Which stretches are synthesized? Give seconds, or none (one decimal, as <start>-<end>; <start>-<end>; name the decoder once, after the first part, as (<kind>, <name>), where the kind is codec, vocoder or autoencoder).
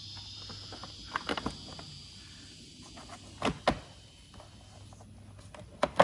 none